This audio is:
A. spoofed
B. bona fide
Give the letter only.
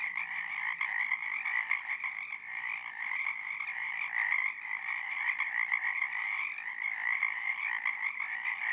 B